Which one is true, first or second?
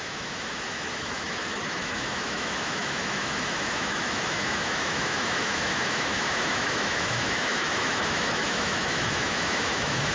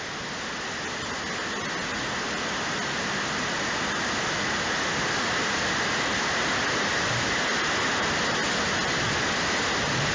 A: second